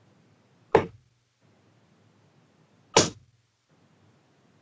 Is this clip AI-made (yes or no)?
no